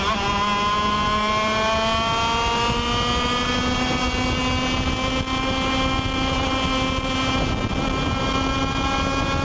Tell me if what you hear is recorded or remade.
recorded